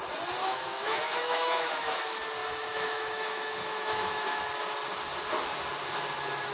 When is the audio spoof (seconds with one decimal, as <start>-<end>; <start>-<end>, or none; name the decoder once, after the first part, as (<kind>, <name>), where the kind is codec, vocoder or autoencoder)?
0.4-2.0 (autoencoder, DAC-VAE); 2.4-4.4